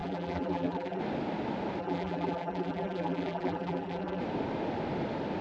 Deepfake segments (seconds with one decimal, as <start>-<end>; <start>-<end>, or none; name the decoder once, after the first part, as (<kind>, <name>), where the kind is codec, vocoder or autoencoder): 0.0-1.0 (vocoder, BigVGAN v2); 1.8-4.2